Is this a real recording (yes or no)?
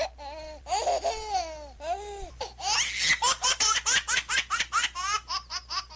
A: yes